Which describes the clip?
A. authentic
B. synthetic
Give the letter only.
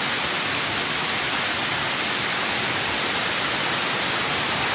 A